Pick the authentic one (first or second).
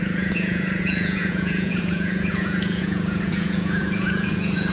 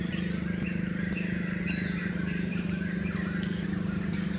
second